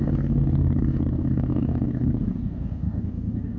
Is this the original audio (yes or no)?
no